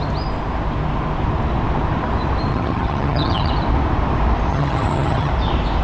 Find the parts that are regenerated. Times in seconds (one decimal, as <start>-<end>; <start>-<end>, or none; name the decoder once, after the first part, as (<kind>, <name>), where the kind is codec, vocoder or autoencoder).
2.5-3.5 (vocoder, HiFi-GAN); 4.5-5.3